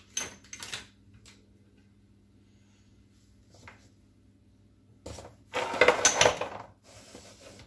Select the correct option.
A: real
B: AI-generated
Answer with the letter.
A